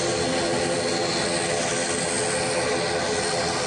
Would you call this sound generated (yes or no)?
no